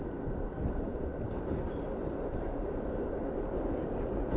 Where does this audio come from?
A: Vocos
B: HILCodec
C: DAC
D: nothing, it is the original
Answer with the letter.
D